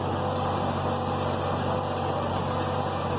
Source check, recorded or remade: recorded